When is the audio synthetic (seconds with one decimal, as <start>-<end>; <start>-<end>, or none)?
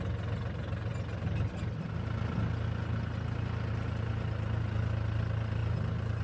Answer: none